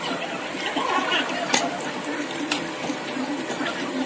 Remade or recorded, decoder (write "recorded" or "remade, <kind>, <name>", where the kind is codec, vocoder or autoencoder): recorded